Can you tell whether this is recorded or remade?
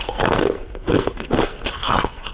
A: remade